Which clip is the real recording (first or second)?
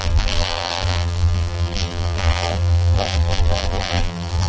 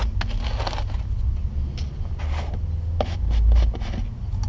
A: second